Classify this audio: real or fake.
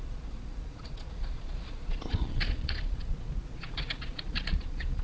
fake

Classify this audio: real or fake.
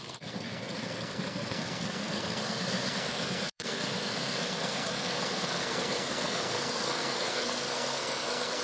fake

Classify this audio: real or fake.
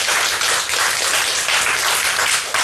real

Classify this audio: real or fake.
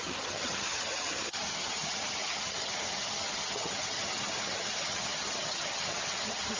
fake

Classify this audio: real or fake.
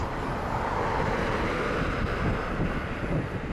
real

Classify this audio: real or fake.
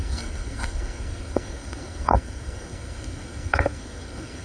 fake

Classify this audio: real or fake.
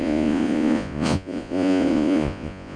fake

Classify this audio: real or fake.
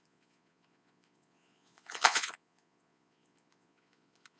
fake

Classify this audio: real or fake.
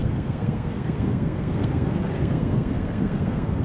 fake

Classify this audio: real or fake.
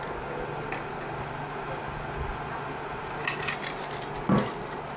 real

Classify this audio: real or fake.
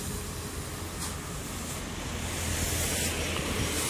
real